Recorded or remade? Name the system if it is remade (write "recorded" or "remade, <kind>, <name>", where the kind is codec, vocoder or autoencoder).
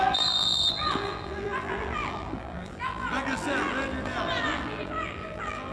remade, vocoder, BigVGAN v2